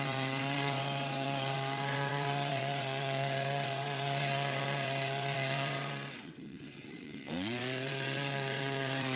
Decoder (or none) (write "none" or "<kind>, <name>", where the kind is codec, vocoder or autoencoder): vocoder, WaveNeXt